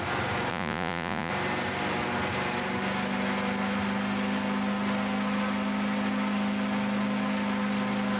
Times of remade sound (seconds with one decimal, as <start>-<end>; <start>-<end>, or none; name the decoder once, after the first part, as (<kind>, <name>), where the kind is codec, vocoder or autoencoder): 0.5-1.3 (vocoder, Vocos)